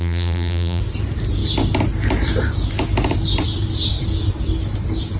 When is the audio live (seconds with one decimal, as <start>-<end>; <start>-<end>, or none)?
0.8-5.2